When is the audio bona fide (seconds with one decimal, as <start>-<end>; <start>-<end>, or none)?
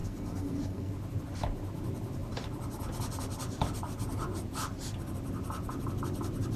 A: 0.9-6.6